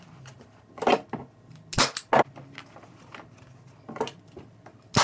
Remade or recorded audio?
recorded